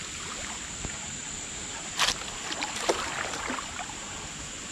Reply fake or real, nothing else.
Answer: real